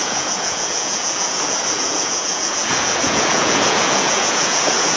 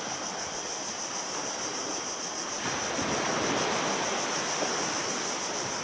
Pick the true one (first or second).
second